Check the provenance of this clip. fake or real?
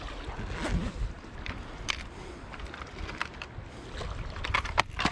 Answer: real